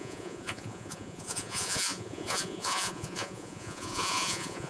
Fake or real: fake